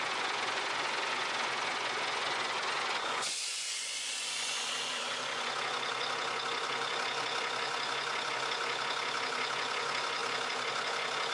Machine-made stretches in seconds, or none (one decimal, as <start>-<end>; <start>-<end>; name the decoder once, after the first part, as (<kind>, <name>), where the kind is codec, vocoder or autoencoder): 0.0-11.3 (vocoder, Vocos)